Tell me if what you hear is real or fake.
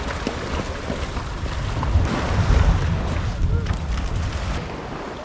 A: real